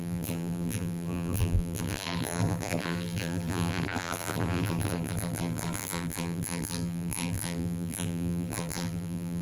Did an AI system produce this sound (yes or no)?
yes